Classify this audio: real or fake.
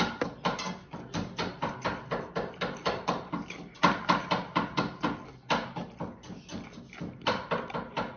real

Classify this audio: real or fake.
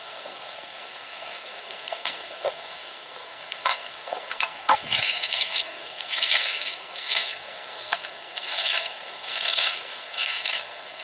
fake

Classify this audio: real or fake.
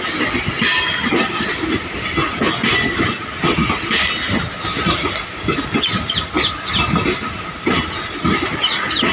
real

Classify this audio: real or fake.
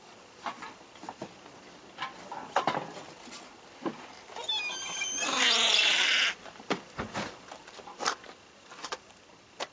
real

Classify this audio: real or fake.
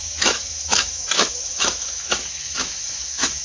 fake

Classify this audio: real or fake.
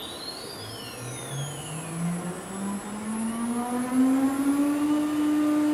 real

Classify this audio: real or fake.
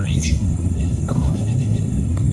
fake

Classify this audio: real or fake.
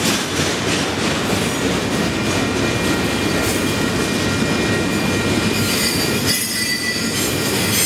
real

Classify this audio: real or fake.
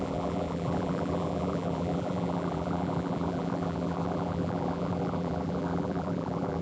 fake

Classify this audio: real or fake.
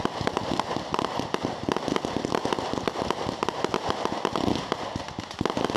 real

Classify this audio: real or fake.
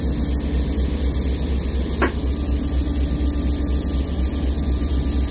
real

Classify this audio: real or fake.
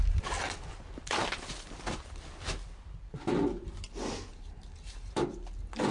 real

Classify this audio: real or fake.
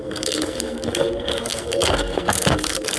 fake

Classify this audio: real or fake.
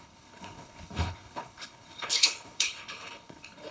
fake